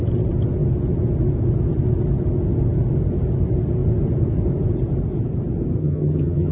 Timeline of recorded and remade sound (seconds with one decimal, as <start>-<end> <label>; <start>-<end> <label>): 0.0-5.8 recorded; 5.8-6.5 remade